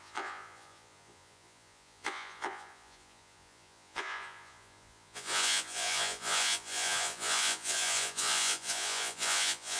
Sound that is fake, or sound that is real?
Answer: fake